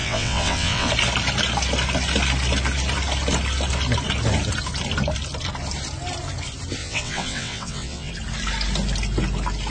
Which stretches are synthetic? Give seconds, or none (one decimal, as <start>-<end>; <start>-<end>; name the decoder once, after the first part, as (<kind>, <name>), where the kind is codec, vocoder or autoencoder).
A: 0.0-0.9 (vocoder, WaveNeXt); 6.8-8.1